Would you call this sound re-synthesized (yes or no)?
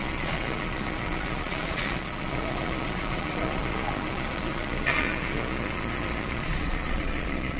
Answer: yes